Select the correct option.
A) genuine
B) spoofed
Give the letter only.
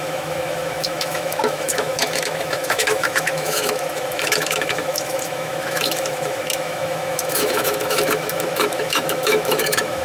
B